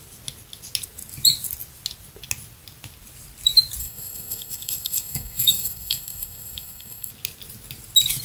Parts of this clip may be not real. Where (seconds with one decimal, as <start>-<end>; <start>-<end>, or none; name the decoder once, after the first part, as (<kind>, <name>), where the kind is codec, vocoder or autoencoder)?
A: 3.8-7.1 (codec, SNAC)